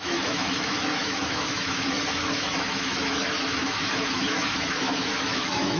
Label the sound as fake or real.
fake